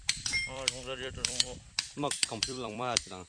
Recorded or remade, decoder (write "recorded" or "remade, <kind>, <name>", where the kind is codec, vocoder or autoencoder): remade, vocoder, BigVGAN v2